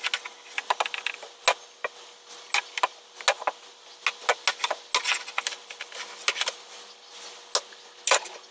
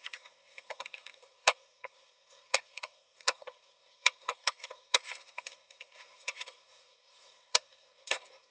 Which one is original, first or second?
first